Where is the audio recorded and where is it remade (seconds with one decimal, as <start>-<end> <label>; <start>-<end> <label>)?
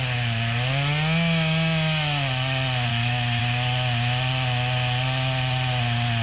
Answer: 0.0-2.9 recorded; 2.9-3.4 remade; 3.4-6.2 recorded